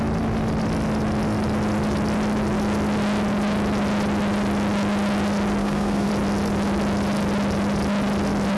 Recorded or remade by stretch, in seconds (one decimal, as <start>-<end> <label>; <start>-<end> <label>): 0.0-5.6 recorded; 5.6-6.1 remade; 6.1-8.6 recorded